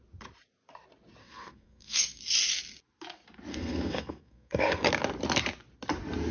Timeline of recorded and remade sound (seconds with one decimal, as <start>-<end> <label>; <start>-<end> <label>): 0.0-1.2 recorded; 1.2-2.2 remade; 2.2-3.5 recorded; 3.5-4.9 remade; 4.9-6.3 recorded